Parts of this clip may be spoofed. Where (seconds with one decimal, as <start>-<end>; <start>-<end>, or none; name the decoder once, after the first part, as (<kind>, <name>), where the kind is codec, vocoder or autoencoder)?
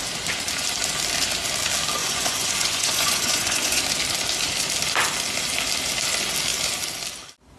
2.0-3.8 (vocoder, Vocos)